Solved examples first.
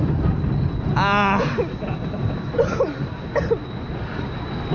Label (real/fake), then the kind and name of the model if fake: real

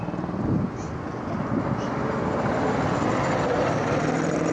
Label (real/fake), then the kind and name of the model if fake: real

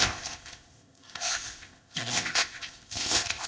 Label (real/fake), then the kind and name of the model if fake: fake, codec, ZipCodec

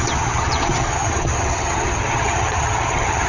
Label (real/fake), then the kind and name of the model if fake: fake, vocoder, HiFi-GAN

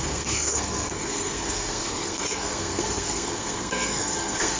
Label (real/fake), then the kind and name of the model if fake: fake, codec, SNAC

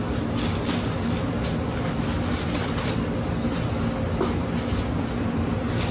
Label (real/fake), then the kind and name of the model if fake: real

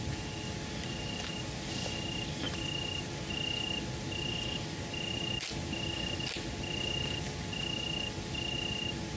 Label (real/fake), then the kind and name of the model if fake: real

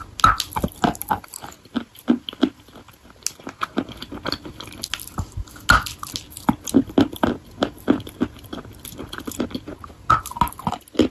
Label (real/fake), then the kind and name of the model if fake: real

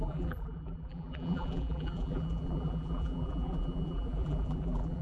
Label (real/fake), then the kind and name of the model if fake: fake, vocoder, BigVGAN v2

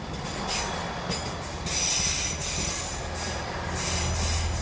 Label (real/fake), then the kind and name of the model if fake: real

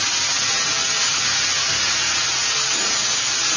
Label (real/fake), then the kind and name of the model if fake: real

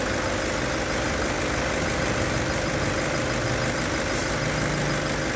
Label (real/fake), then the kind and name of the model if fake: real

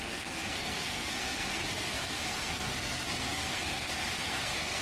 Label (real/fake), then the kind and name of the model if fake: fake, codec, SNAC